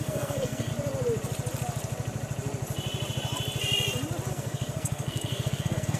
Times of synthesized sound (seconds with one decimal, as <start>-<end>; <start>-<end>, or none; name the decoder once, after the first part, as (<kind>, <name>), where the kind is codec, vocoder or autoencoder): 0.0-0.7 (codec, SNAC); 4.3-6.0